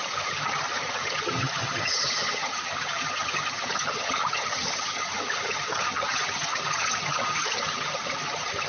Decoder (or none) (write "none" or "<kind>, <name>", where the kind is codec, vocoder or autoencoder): vocoder, HiFi-GAN